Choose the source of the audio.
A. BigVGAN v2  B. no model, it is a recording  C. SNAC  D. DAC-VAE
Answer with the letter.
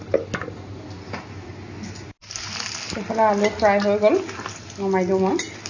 B